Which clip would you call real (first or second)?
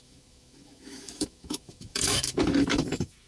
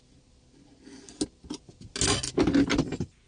second